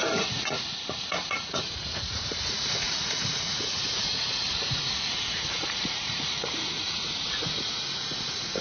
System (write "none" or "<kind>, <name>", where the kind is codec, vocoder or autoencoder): vocoder, Vocos